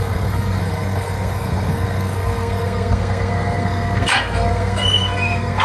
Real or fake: fake